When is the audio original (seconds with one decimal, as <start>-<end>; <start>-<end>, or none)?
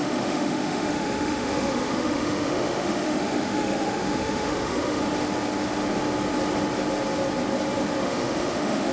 5.0-8.0